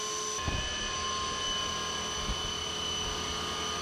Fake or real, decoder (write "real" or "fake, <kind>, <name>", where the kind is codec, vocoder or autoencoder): real